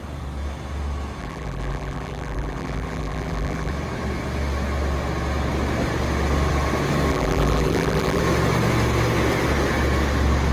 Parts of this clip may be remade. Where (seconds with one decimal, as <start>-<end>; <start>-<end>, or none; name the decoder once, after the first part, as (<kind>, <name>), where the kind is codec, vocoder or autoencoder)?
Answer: 1.2-3.7 (vocoder, BigVGAN v2); 7.1-8.2